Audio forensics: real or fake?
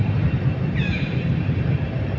fake